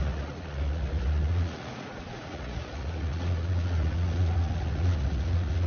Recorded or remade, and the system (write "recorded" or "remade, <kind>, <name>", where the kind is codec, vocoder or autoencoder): remade, vocoder, Vocos